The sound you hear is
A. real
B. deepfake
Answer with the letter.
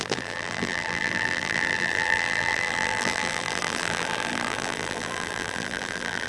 B